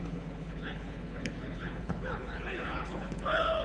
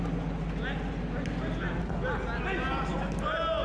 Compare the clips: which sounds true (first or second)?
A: second